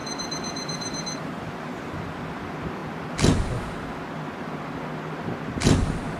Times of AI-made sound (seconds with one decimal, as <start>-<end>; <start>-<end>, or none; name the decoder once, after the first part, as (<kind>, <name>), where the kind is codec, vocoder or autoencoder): 0.0-1.4 (vocoder, BigVGAN v2)